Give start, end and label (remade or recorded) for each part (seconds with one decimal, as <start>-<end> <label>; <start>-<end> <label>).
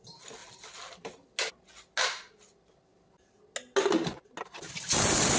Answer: 0.0-5.4 recorded